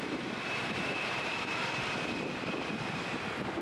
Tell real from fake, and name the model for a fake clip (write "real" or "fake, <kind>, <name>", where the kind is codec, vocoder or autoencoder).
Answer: fake, vocoder, BigVGAN v2